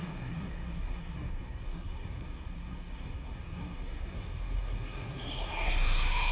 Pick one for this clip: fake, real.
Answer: fake